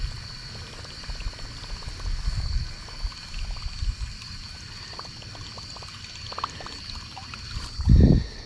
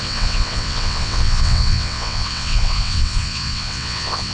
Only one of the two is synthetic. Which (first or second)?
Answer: second